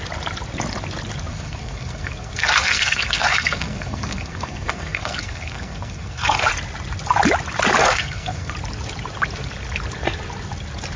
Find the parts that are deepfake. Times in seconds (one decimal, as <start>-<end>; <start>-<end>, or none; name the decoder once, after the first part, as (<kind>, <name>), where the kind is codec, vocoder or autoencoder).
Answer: 1.3-6.5 (codec, SNAC); 7.8-8.5